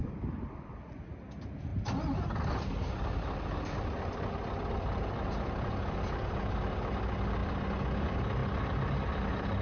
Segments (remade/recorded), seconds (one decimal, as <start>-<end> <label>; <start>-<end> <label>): 0.0-9.6 recorded